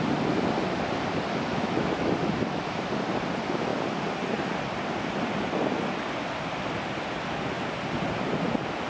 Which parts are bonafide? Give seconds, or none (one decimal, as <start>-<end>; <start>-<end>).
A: 0.0-1.5; 2.9-8.9